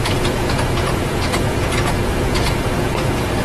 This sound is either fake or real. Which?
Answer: fake